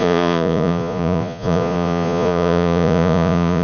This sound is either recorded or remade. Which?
remade